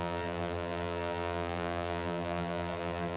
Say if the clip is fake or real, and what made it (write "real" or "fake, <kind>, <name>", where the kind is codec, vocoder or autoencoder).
fake, vocoder, BigVGAN v2